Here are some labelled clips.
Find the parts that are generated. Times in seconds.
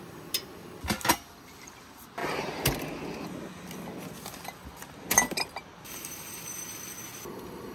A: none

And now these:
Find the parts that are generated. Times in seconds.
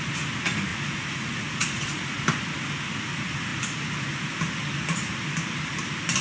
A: 0.7-2.2 (vocoder, Vocos)